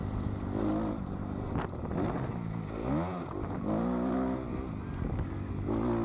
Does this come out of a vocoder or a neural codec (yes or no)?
no